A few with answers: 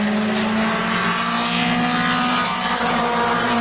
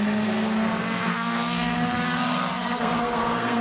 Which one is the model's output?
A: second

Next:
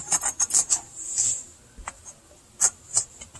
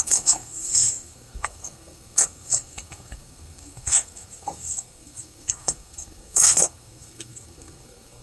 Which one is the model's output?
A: second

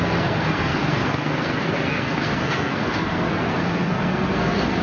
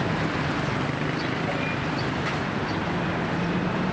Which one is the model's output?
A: first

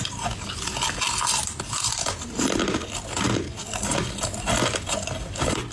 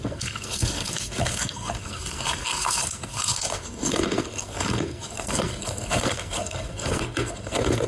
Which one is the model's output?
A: second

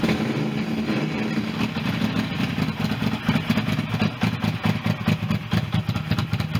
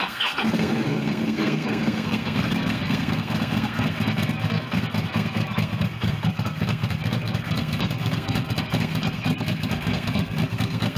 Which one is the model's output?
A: second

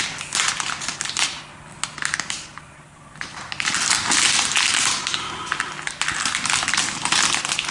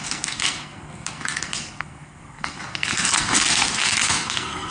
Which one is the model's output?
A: second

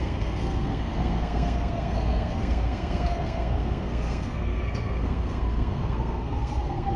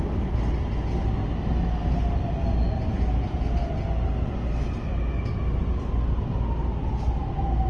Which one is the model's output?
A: first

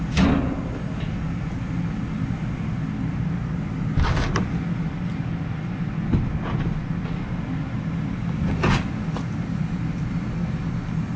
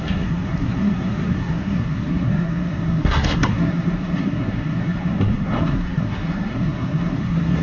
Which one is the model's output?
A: second